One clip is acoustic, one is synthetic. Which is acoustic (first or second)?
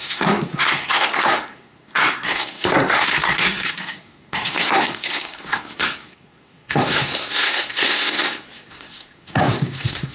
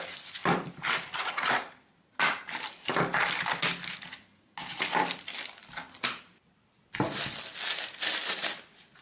second